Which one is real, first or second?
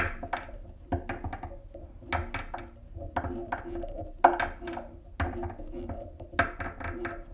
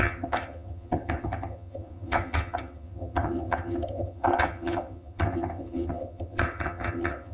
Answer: first